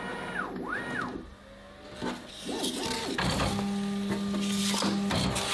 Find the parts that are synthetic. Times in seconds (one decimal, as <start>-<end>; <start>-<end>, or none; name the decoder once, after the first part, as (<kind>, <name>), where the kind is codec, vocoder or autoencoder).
none